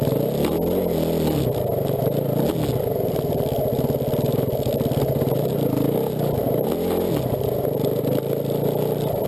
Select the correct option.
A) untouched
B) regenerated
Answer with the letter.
A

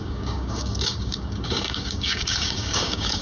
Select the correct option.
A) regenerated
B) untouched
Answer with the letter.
A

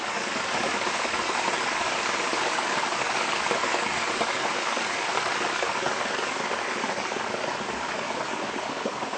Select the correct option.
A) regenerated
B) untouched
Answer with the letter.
A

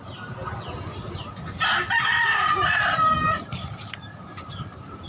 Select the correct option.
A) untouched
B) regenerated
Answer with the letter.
A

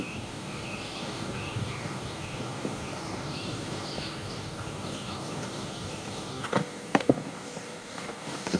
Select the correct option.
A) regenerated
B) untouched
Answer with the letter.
A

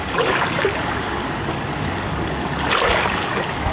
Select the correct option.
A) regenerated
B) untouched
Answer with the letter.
A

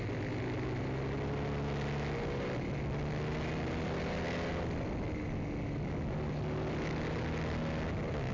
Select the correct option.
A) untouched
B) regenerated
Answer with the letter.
A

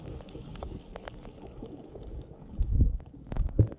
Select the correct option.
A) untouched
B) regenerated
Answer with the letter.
B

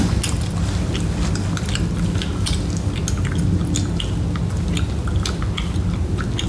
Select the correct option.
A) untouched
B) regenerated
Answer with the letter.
A